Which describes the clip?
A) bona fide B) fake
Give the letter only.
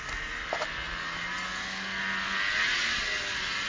A